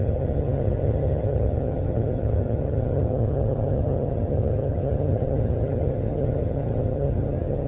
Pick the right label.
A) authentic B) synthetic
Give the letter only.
B